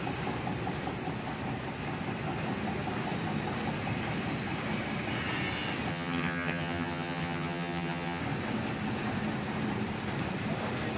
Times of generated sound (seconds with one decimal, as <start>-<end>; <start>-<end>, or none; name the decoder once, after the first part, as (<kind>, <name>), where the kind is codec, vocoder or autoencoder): 5.9-8.2 (vocoder, HiFi-GAN)